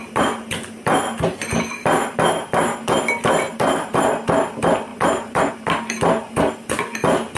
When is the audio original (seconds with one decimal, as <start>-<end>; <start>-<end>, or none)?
0.0-3.5; 4.2-4.9; 5.5-7.4